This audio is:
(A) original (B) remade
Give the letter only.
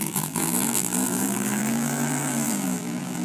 B